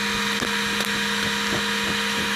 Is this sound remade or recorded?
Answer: recorded